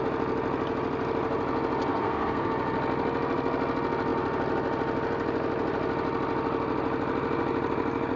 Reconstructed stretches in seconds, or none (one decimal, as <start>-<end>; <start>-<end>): 1.9-2.5